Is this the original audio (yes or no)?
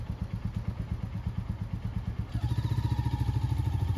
yes